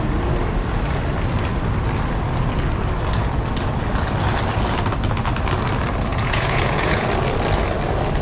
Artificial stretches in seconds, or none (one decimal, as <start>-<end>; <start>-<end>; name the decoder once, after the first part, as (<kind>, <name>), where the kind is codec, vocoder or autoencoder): 6.1-7.1 (vocoder, Vocos)